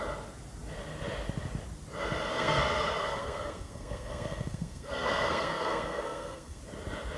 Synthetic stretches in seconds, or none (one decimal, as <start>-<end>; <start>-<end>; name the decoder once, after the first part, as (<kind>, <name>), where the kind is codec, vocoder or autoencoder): 2.3-6.6 (codec, SNAC)